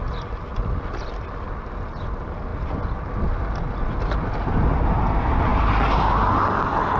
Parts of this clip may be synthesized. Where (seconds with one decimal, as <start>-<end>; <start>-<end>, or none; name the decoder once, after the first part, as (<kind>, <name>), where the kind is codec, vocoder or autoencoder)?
none